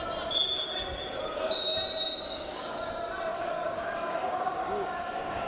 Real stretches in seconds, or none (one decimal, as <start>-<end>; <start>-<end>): 0.0-2.3; 2.9-3.3